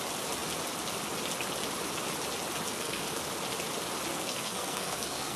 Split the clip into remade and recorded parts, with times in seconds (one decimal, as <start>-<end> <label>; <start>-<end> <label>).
0.0-2.7 recorded; 2.7-3.2 remade; 3.2-4.1 recorded; 4.1-5.4 remade